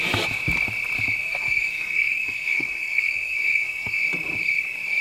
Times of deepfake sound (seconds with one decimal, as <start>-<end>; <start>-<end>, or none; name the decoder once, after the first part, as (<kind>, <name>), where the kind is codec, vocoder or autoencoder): 1.2-4.0 (codec, SNAC)